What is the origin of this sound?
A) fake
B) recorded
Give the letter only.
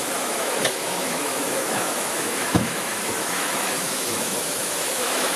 A